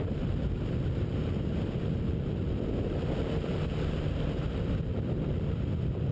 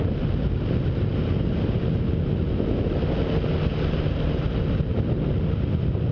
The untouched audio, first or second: second